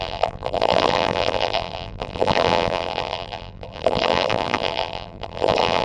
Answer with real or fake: fake